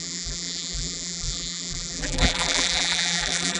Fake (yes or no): yes